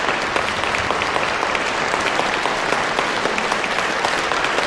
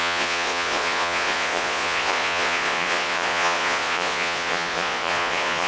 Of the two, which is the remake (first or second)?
second